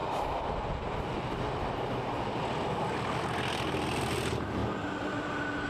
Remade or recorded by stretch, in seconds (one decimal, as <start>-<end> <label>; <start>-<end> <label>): 0.0-5.7 recorded